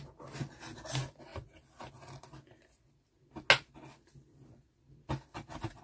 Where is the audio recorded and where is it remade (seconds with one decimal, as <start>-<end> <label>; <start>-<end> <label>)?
0.0-5.8 recorded